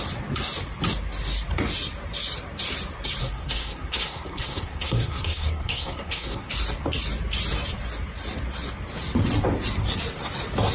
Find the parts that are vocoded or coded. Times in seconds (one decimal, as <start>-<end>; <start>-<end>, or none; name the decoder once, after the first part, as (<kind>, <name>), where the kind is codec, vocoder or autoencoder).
3.2-6.5 (codec, SNAC)

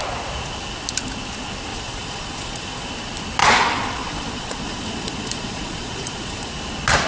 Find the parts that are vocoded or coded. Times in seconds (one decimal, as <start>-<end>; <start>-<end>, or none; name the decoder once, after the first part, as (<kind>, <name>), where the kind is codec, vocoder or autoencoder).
1.7-2.9 (vocoder, Vocos); 3.4-6.5

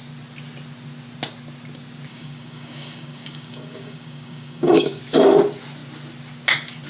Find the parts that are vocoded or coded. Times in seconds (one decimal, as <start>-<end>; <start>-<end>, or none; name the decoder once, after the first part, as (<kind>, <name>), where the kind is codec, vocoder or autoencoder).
2.1-5.0 (codec, DAC)

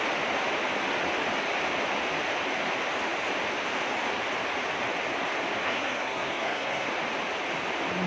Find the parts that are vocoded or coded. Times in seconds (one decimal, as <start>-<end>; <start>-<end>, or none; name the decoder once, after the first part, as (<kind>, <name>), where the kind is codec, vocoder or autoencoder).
5.6-6.9 (codec, SNAC)

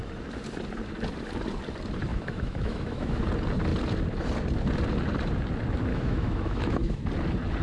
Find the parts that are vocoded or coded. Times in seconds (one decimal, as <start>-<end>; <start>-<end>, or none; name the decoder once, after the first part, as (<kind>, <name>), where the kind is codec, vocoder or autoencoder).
2.1-3.2 (autoencoder, DAC-VAE); 5.9-7.0

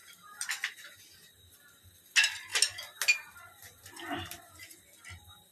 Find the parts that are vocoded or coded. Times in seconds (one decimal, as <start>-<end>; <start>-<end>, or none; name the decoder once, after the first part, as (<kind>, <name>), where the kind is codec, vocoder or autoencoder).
none

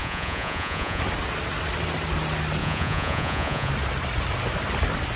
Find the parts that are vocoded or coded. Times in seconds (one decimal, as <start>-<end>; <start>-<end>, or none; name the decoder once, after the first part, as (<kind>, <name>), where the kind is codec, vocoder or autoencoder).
0.0-1.0 (vocoder, Vocos); 2.6-3.7